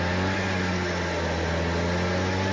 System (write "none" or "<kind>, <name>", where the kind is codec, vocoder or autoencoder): none